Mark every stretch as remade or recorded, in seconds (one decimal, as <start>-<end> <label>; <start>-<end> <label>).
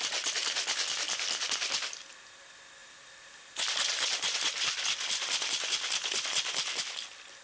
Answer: 0.0-2.8 recorded; 2.8-6.8 remade; 6.8-7.4 recorded